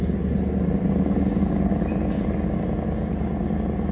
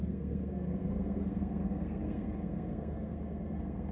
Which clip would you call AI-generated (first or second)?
second